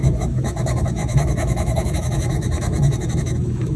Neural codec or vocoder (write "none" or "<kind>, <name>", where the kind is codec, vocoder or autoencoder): autoencoder, DAC-VAE